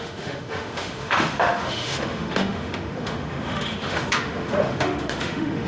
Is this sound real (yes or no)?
no